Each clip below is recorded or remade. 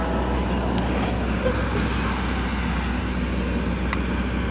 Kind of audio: recorded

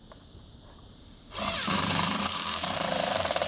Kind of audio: remade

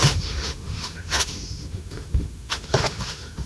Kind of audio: remade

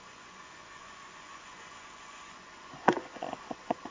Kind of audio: remade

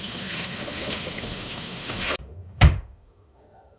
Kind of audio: remade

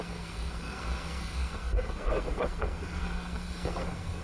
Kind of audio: remade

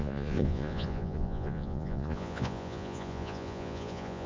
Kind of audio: remade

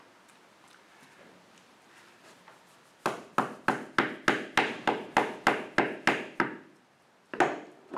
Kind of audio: recorded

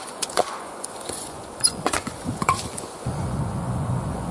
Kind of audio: remade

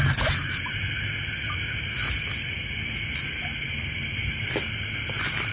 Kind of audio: recorded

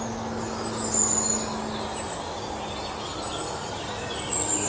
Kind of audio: recorded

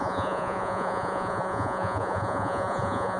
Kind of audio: remade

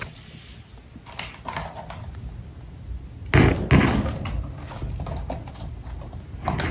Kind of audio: recorded